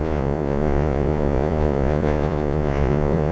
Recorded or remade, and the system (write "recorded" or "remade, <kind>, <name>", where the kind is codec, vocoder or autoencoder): remade, vocoder, Vocos